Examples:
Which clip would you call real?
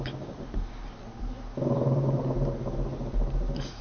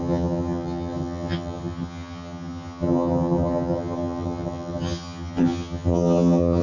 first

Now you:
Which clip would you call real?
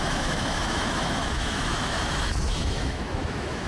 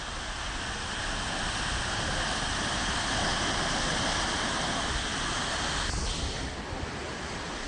second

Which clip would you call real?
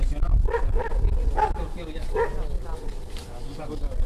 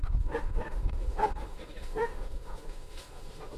first